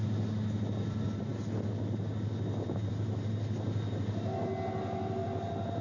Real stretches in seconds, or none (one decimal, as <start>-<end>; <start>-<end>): 0.0-5.8